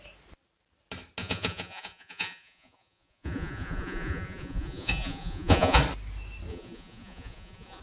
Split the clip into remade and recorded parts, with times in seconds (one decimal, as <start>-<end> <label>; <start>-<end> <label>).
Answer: 0.0-1.2 recorded; 1.2-5.8 remade; 5.8-6.5 recorded; 6.5-7.8 remade